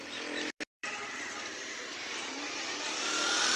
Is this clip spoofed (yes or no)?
yes